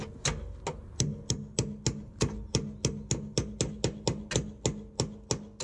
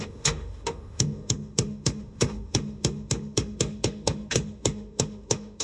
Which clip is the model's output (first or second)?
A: second